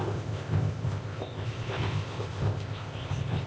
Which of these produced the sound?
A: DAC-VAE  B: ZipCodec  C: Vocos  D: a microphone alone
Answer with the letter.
B